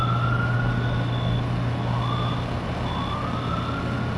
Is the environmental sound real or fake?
real